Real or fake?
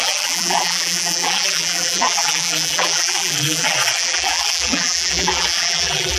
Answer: fake